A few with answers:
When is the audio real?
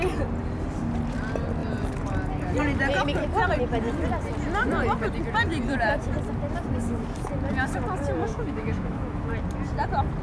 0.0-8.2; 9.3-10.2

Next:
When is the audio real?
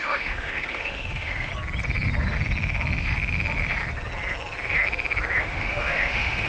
1.5-5.4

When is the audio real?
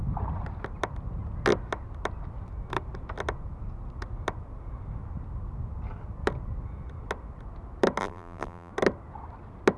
0.0-8.0; 8.7-9.8